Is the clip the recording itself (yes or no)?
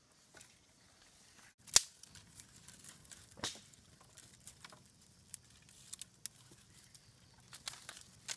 yes